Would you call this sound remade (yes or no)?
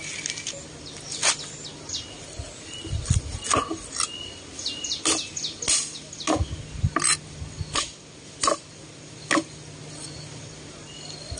no